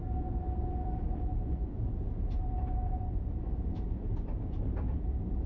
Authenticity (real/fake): real